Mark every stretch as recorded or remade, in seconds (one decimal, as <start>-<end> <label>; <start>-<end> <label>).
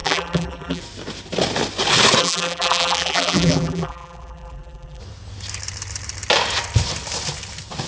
0.0-0.8 remade; 0.8-2.2 recorded; 2.2-5.0 remade; 5.0-7.9 recorded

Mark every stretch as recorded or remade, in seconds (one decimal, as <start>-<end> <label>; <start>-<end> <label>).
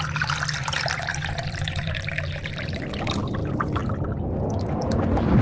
0.0-1.1 recorded; 1.1-2.8 remade; 2.8-5.4 recorded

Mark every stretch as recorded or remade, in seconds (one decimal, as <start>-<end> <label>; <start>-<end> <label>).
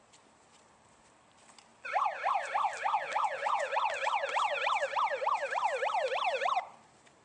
0.0-1.7 remade; 1.7-2.3 recorded; 2.3-7.2 remade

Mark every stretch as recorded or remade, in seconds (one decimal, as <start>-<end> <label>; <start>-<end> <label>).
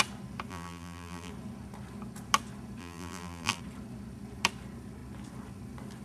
0.0-0.5 recorded; 0.5-1.3 remade; 1.3-2.8 recorded; 2.8-3.6 remade; 3.6-6.0 recorded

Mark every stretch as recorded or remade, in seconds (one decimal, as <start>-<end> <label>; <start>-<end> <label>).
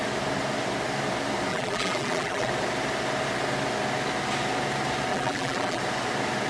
0.0-1.5 recorded; 1.5-2.5 remade; 2.5-5.1 recorded; 5.1-5.8 remade; 5.8-6.5 recorded